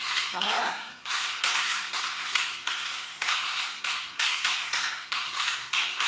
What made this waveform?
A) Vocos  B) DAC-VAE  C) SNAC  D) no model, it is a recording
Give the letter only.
C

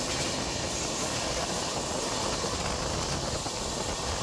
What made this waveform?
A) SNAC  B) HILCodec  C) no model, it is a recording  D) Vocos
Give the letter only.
C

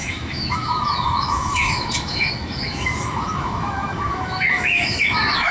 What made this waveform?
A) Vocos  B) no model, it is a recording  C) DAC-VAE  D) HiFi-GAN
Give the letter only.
C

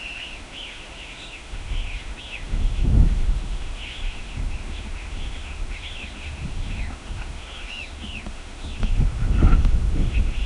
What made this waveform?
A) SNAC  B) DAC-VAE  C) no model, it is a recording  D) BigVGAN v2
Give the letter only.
B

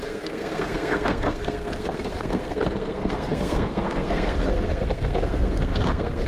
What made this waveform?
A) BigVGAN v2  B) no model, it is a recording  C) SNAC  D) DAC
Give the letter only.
C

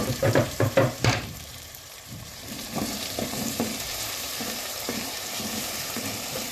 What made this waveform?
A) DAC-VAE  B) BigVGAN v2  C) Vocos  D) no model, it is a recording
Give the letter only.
B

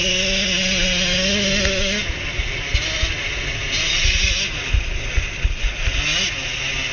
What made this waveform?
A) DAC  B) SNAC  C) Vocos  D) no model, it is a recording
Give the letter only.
D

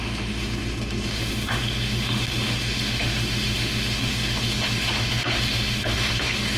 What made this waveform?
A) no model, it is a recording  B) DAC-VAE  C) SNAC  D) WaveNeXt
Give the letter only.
B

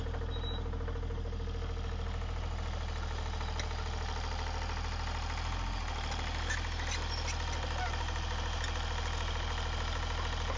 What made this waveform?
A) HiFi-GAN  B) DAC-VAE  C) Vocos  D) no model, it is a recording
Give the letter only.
D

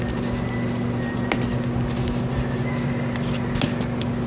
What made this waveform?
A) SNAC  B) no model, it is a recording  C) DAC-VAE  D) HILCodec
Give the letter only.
B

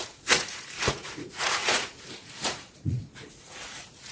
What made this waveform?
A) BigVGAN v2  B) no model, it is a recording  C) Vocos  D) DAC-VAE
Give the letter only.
C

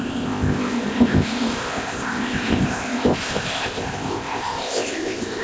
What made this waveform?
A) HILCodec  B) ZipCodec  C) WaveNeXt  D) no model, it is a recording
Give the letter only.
B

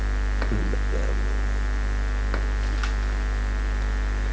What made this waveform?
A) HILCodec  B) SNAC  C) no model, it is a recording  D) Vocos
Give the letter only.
C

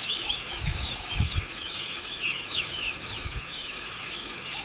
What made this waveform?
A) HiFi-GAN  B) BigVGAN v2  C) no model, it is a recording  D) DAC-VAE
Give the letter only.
D